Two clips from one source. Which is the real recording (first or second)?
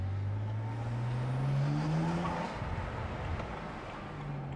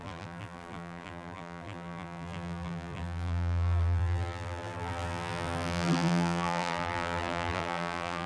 first